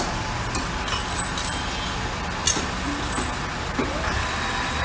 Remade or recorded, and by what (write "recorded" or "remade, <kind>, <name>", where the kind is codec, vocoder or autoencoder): recorded